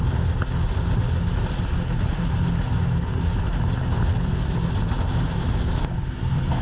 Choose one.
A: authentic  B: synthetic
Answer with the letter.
A